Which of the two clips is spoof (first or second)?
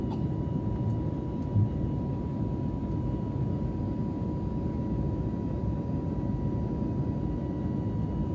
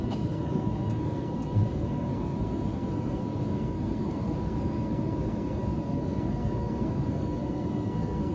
second